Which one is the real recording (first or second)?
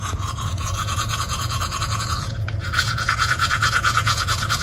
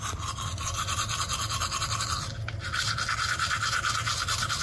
second